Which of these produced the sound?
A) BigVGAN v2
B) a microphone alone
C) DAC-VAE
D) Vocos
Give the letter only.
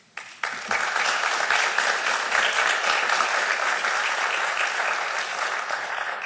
B